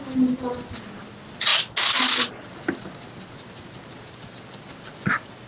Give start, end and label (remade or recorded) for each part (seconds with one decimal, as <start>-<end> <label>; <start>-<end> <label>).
0.0-5.5 recorded